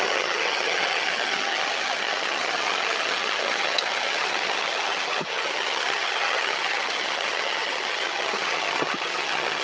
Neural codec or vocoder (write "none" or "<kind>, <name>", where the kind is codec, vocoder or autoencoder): vocoder, HiFi-GAN